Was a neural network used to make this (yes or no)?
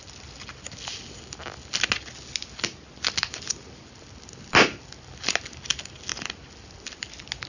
no